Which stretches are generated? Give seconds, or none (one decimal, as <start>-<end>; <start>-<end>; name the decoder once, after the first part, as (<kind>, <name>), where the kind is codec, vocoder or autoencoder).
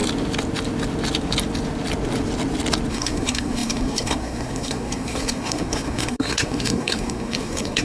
2.9-7.8 (codec, SNAC)